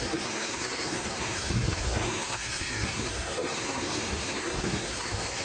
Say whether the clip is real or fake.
fake